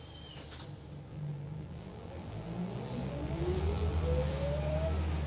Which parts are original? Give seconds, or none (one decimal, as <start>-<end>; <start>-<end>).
0.0-1.1; 4.3-5.3